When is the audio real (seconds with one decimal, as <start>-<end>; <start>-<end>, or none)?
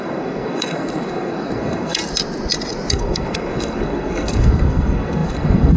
2.0-2.9